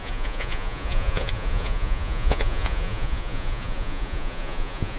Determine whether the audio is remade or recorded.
remade